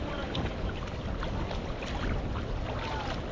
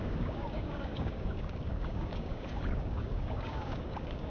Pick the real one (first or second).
first